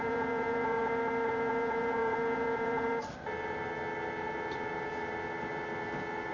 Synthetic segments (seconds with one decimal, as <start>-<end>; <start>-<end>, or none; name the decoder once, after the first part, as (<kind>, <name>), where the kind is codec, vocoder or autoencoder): 0.0-0.8 (vocoder, Vocos); 1.3-2.9